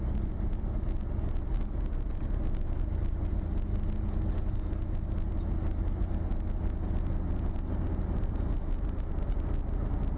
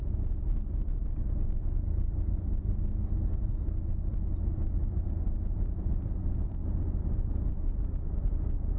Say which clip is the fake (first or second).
second